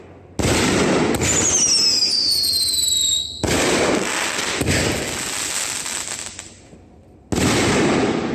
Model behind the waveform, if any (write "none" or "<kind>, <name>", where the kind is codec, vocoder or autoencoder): none